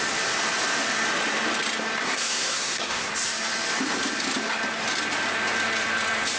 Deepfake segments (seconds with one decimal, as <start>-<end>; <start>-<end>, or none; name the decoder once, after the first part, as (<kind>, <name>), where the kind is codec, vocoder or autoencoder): 2.0-3.1 (codec, SNAC)